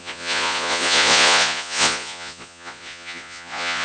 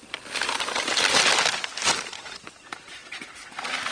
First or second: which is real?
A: second